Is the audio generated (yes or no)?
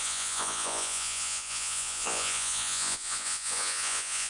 yes